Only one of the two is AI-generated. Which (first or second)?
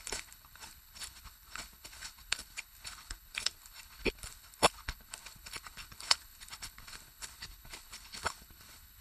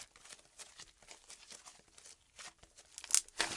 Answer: first